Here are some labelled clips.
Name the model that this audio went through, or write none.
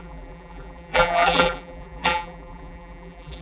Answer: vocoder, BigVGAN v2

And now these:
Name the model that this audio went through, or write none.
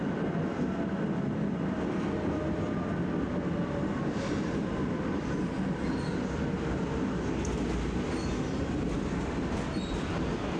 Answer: none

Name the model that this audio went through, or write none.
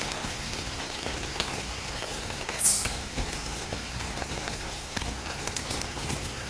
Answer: codec, SNAC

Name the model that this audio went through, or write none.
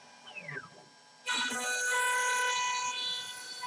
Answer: none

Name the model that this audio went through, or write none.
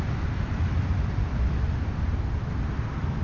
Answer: none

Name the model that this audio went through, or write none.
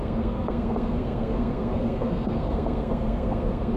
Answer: codec, SNAC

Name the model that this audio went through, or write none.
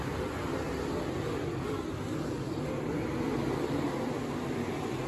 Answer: none